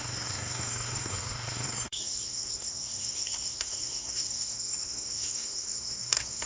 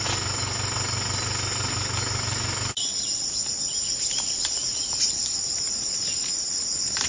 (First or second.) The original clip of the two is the second